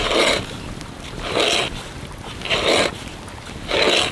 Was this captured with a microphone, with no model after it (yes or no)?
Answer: yes